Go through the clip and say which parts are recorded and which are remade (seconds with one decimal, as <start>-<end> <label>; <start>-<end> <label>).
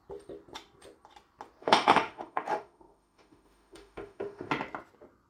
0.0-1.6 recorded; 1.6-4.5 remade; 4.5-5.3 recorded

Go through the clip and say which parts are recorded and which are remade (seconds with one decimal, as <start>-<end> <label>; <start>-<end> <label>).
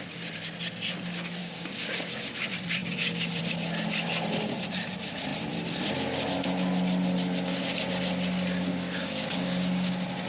0.0-1.4 recorded; 1.4-2.1 remade; 2.1-2.8 recorded; 2.8-3.4 remade; 3.4-8.7 recorded; 8.7-9.9 remade; 9.9-10.3 recorded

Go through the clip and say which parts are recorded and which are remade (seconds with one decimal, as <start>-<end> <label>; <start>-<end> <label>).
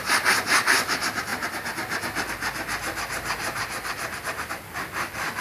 0.0-5.4 recorded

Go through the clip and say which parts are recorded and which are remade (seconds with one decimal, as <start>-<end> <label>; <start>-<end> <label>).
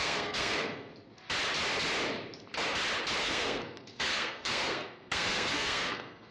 0.0-0.9 remade; 0.9-3.2 recorded; 3.2-6.3 remade